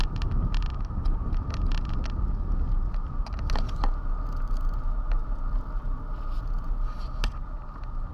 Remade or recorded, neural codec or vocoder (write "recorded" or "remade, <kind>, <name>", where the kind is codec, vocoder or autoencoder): recorded